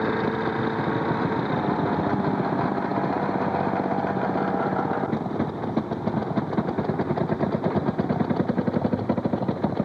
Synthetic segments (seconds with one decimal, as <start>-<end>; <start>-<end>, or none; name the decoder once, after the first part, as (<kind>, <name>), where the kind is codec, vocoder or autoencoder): none